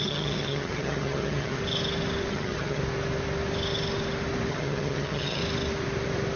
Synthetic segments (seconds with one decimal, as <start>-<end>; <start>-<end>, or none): 0.0-1.6; 2.3-2.8; 4.5-5.4

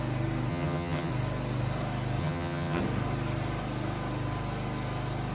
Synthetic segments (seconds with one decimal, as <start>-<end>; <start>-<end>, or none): 0.5-1.1; 2.2-2.8